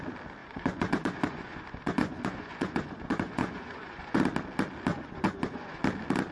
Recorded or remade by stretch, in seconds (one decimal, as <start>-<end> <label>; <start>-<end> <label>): 0.0-0.4 recorded; 0.4-4.2 remade; 4.2-4.9 recorded; 4.9-5.8 remade; 5.8-6.3 recorded